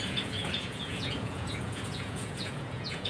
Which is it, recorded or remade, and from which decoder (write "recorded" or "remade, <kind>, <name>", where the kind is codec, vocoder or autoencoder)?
remade, vocoder, Vocos